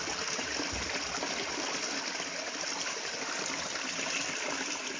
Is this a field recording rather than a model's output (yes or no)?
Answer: yes